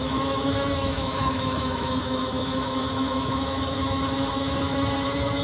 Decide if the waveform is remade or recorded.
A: remade